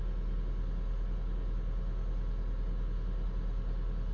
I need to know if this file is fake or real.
real